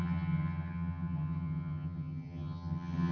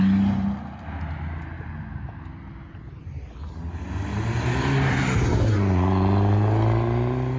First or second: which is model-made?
first